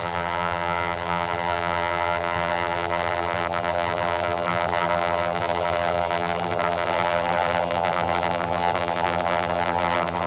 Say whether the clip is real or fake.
fake